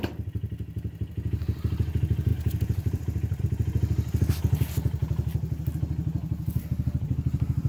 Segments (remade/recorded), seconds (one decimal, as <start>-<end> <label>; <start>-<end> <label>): 0.0-2.3 recorded; 2.3-3.4 remade; 3.4-7.7 recorded